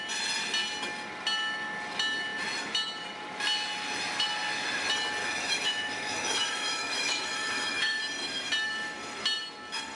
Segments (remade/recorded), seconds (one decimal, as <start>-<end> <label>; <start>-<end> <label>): 0.0-5.2 recorded; 5.2-8.0 remade; 8.0-9.9 recorded